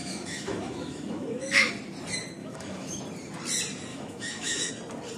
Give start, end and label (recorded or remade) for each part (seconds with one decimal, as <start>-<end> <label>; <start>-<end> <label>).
0.0-1.7 remade; 1.7-2.4 recorded; 2.4-3.0 remade; 3.0-3.9 recorded; 3.9-4.7 remade; 4.7-5.2 recorded